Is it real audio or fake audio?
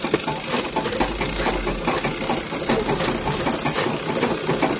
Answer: real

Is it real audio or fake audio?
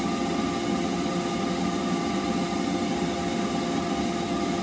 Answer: real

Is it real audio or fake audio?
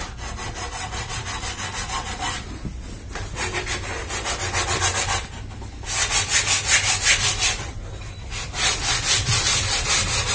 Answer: real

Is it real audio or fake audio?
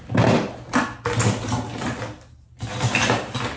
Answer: real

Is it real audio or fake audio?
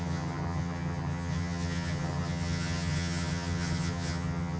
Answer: fake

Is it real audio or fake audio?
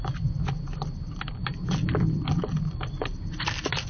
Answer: real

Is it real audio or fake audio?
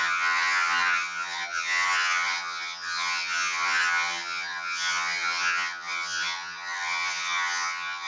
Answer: fake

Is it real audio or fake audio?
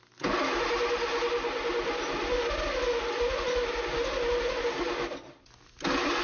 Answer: real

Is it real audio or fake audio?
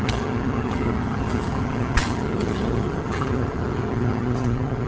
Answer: fake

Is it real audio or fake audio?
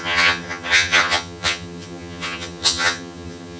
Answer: fake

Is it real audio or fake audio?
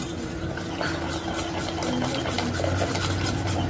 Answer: real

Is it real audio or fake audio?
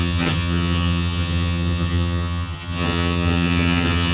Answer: fake